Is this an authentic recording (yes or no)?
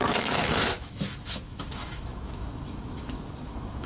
no